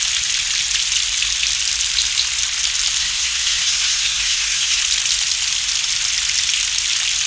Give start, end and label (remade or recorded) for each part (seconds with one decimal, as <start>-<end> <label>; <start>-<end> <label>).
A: 0.0-3.0 recorded; 3.0-4.8 remade; 4.8-7.3 recorded